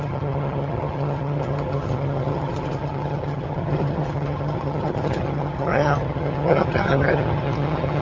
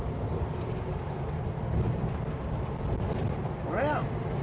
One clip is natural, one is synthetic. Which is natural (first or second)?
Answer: second